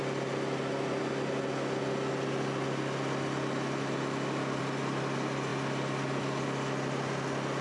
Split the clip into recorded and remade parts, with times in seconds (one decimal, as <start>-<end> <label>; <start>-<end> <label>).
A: 0.0-7.6 recorded